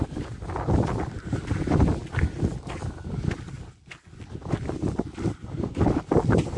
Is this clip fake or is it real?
real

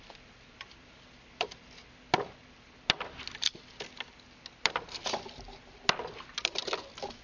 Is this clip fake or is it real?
real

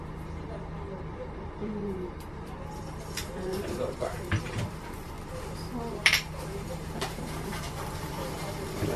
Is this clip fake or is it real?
fake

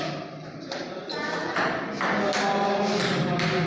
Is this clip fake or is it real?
real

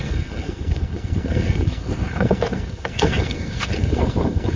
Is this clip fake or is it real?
fake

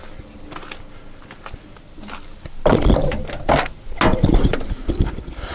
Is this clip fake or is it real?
real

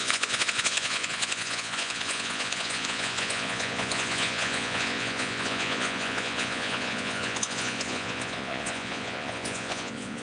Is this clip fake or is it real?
fake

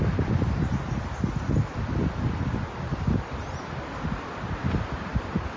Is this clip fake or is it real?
real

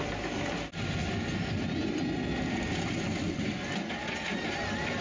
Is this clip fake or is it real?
real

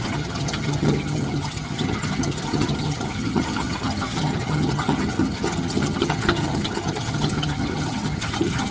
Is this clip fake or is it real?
fake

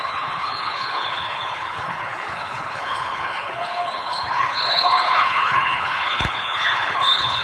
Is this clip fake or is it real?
fake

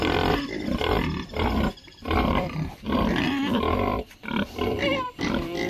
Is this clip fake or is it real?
fake